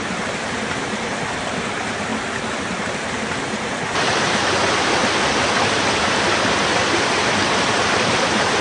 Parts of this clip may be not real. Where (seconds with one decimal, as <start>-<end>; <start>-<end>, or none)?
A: 0.0-2.1; 2.6-5.0; 5.6-8.6